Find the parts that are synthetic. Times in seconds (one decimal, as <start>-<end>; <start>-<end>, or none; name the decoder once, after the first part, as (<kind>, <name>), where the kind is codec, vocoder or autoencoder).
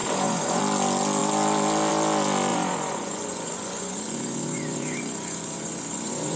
0.0-0.6 (vocoder, Vocos); 2.5-6.4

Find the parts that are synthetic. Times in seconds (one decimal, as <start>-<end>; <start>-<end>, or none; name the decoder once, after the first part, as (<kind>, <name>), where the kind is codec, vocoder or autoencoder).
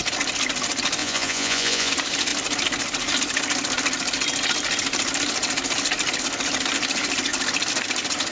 1.0-1.9 (vocoder, Vocos)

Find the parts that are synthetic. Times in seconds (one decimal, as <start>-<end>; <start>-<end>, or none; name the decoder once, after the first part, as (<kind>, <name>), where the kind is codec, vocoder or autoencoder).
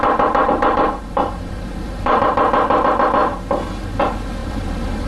0.4-2.3 (vocoder, BigVGAN v2); 4.4-5.1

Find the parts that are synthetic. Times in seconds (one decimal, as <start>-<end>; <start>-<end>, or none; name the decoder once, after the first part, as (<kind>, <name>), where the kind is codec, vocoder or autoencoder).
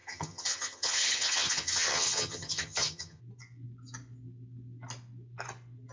0.0-3.2 (vocoder, HiFi-GAN)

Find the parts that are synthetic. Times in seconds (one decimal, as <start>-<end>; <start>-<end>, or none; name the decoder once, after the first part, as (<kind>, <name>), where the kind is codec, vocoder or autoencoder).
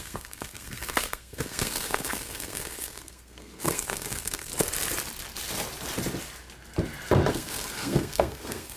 0.0-4.5 (codec, SNAC); 7.3-8.8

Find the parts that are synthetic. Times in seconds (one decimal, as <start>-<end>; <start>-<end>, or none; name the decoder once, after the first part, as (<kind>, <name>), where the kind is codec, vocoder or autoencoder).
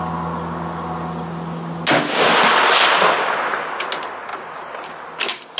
4.3-4.9 (vocoder, BigVGAN v2)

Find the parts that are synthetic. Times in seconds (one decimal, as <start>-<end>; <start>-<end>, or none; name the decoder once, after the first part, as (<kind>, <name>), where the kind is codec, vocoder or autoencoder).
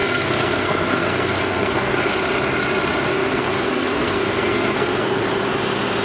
0.0-2.1 (codec, SNAC); 3.1-5.2